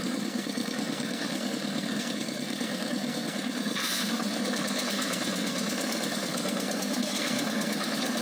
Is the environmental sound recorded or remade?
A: remade